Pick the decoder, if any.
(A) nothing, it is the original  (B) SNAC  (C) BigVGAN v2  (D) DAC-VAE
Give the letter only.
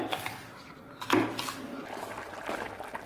A